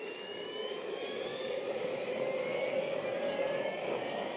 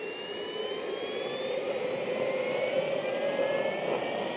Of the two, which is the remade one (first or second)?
first